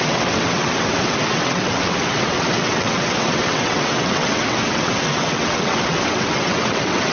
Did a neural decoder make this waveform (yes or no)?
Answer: yes